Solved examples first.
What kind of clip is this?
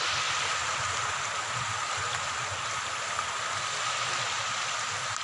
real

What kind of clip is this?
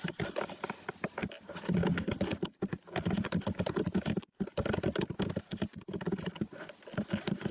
real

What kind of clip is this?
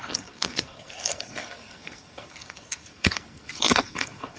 fake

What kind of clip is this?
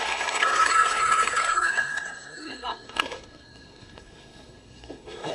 fake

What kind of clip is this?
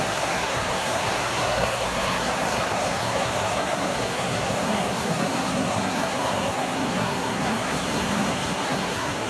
fake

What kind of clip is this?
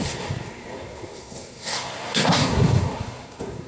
fake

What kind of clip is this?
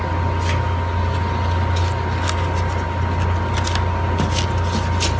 real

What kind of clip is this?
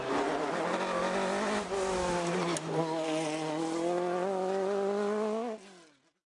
real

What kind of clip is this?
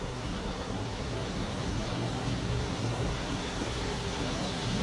fake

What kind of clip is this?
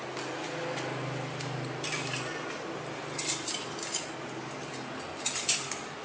real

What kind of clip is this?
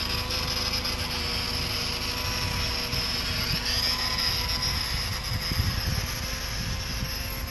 real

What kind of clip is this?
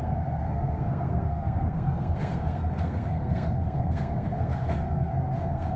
fake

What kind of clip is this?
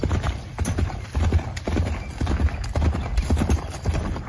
real